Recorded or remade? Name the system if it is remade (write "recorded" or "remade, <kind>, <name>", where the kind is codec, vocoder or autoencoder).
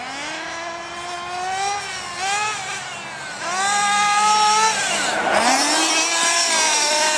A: recorded